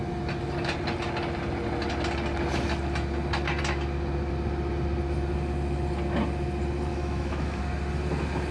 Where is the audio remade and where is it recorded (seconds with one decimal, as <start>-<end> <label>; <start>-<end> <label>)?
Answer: 0.0-6.9 recorded; 6.9-7.6 remade; 7.6-8.5 recorded